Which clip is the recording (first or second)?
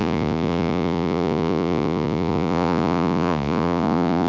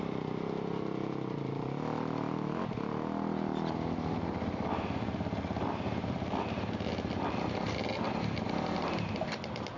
second